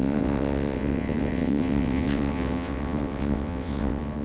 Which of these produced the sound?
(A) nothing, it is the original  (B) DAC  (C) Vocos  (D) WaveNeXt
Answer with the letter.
D